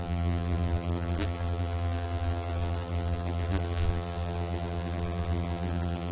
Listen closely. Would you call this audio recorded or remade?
remade